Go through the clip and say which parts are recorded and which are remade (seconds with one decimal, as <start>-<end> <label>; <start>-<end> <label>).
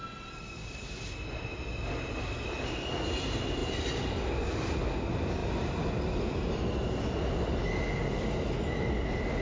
0.0-3.6 recorded; 3.6-4.1 remade; 4.1-5.4 recorded; 5.4-6.7 remade; 6.7-9.4 recorded